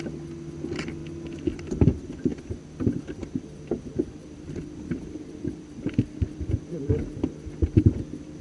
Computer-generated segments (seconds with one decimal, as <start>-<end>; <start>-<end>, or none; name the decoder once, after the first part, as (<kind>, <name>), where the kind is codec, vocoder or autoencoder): 3.2-8.0 (vocoder, BigVGAN v2)